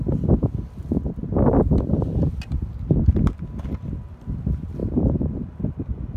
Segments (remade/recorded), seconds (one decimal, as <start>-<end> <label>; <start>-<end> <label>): 0.0-6.2 recorded